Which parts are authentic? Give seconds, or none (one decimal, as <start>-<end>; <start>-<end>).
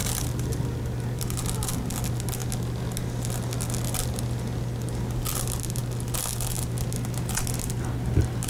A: 0.6-8.5